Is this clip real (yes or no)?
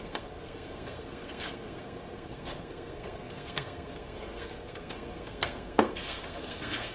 no